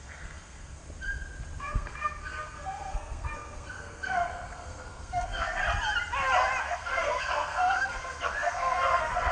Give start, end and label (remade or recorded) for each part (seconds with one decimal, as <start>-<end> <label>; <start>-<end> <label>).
0.0-0.8 remade; 0.8-1.6 recorded; 1.6-5.6 remade; 5.6-6.6 recorded; 6.6-9.3 remade